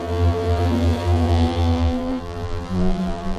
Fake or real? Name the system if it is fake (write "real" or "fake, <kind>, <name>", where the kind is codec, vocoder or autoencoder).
fake, vocoder, BigVGAN v2